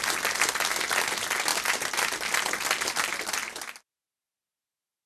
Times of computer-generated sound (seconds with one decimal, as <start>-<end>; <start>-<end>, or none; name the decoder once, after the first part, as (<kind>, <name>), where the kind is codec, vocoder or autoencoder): none